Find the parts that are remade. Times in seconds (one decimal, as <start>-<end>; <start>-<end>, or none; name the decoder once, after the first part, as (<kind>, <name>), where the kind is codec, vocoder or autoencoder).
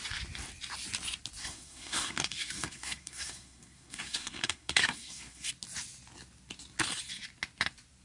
1.4-5.5 (codec, SNAC)